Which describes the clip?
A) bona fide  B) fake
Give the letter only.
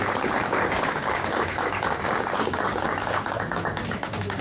B